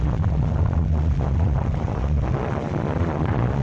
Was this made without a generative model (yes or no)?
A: no